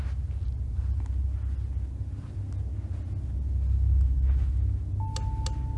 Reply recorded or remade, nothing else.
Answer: recorded